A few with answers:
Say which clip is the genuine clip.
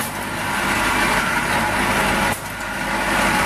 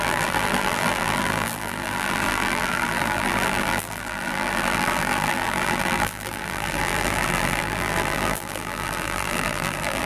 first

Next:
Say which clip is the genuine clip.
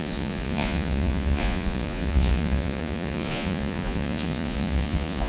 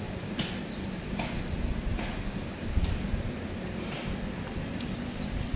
second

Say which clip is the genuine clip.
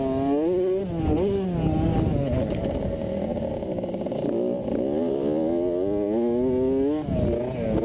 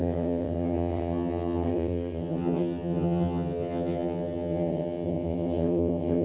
first